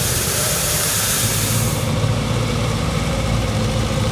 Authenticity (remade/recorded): remade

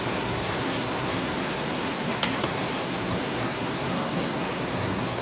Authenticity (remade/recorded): remade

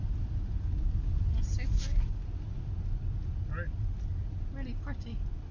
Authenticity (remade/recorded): recorded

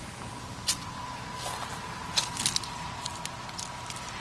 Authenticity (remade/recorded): recorded